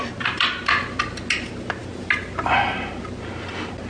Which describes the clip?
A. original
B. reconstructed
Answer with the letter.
A